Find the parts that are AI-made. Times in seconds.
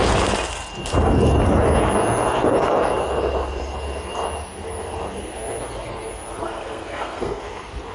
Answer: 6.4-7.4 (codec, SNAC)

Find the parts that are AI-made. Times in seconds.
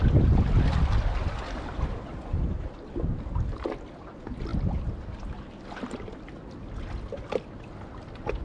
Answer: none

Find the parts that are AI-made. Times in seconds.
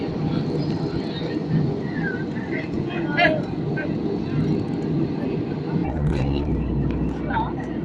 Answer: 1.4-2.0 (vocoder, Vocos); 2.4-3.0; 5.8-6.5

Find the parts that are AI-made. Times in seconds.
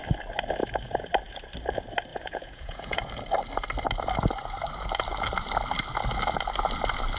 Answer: 2.1-3.1 (vocoder, Vocos)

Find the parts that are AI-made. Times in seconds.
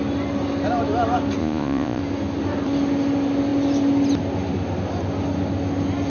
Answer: 1.4-2.0 (vocoder, Vocos)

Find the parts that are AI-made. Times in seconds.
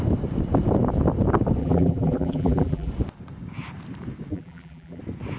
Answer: 1.6-2.9 (vocoder, BigVGAN v2); 4.3-5.0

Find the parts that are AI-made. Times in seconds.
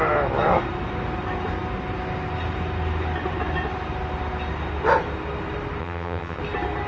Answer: 5.8-6.4 (vocoder, HiFi-GAN)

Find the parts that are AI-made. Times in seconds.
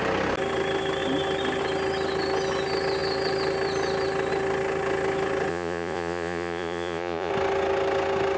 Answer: 5.5-7.3 (vocoder, Vocos)